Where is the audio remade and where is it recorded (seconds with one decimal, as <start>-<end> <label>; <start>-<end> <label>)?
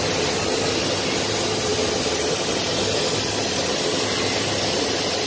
0.0-5.3 recorded